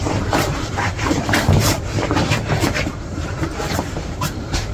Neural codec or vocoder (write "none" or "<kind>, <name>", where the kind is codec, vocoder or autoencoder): vocoder, BigVGAN v2